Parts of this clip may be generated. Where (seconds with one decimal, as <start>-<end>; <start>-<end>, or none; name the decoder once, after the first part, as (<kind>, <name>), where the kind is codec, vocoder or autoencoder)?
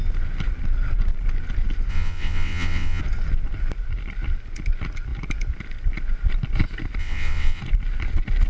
1.9-3.0 (vocoder, WaveNeXt); 7.0-7.6